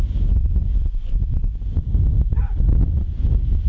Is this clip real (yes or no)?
yes